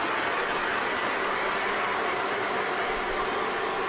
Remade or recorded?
recorded